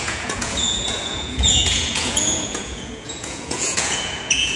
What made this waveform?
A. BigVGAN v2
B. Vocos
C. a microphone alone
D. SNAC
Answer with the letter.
B